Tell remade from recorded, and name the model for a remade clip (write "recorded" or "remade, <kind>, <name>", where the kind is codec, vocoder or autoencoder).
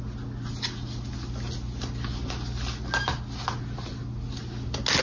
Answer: recorded